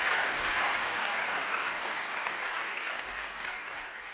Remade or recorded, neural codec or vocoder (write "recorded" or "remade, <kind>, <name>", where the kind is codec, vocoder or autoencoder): remade, codec, DAC